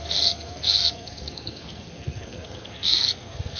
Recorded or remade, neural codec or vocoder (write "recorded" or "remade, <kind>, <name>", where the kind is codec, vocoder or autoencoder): remade, codec, SNAC